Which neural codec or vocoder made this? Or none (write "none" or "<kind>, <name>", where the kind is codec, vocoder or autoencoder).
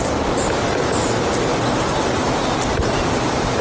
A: none